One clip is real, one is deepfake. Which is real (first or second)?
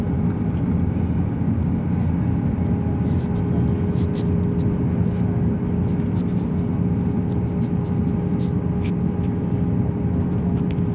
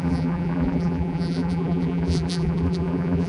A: first